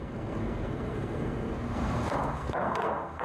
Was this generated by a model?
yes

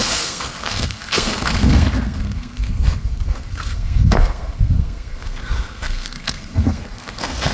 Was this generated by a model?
yes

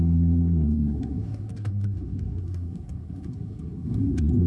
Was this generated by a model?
yes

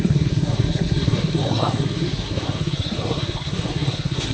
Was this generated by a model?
yes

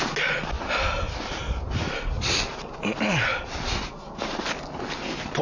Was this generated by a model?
no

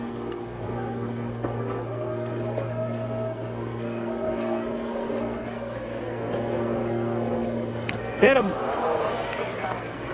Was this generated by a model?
yes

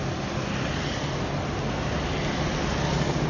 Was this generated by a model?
no